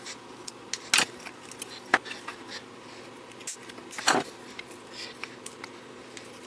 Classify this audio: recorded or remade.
recorded